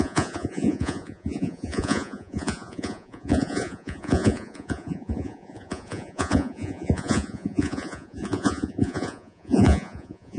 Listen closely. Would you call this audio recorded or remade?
remade